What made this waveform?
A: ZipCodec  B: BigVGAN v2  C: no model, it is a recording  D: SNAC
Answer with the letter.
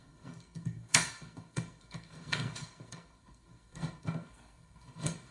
D